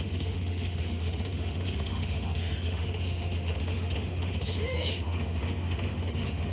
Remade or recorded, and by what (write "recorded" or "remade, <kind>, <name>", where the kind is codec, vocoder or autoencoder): remade, autoencoder, DAC-VAE